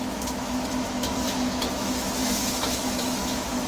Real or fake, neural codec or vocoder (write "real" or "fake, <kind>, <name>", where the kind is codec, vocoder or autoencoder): fake, autoencoder, DAC-VAE